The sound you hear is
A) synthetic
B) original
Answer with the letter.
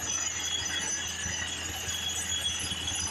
B